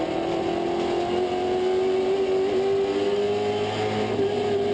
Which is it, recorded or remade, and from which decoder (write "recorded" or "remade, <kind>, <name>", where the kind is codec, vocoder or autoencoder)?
recorded